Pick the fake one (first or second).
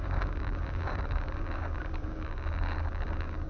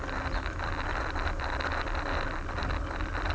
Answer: first